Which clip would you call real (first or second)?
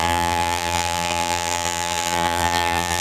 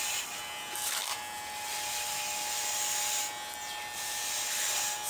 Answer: second